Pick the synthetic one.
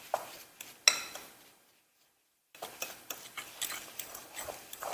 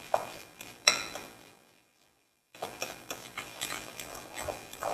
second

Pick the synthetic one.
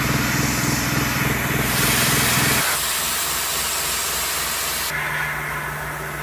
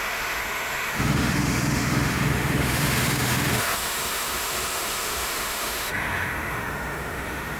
second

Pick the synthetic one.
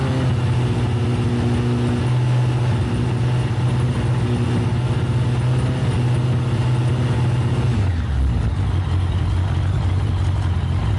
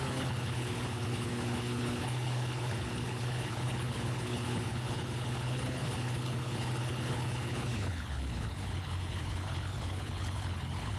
second